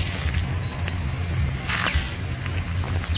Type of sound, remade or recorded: recorded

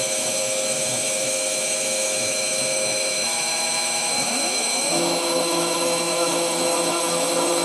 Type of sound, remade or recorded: remade